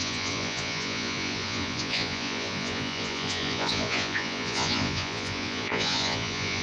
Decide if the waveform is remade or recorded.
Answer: remade